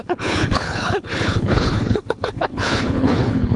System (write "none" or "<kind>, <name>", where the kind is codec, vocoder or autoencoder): codec, HILCodec